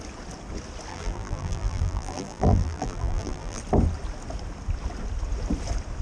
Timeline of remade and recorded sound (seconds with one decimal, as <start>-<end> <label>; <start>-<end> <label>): 0.0-0.9 recorded; 0.9-3.6 remade; 3.6-6.0 recorded